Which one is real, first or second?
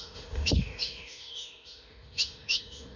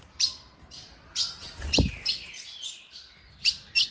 second